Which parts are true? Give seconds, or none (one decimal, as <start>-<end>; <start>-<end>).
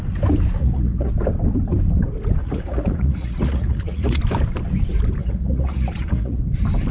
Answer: 0.0-0.6; 1.1-2.4; 4.2-5.2; 6.4-6.9